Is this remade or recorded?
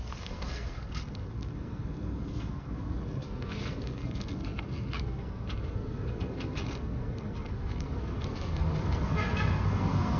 remade